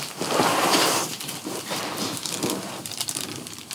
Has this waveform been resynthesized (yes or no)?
yes